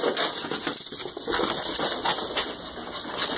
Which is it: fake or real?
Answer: real